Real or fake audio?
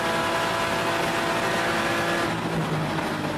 real